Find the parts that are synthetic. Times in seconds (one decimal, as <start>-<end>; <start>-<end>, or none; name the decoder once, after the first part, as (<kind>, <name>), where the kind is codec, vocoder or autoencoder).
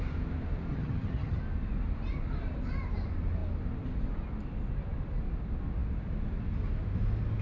0.7-1.4 (vocoder, HiFi-GAN)